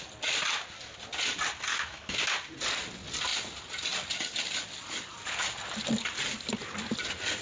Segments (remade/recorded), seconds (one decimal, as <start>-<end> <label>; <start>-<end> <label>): 0.0-1.7 recorded; 1.7-2.2 remade; 2.2-7.4 recorded